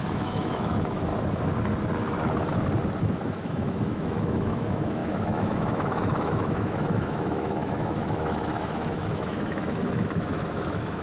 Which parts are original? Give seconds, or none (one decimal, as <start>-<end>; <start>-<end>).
1.1-3.0